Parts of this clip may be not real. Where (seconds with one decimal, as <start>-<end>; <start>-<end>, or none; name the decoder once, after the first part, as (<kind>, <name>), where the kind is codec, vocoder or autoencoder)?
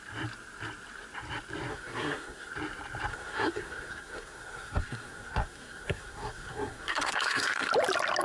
1.7-2.5 (codec, SNAC); 3.1-7.7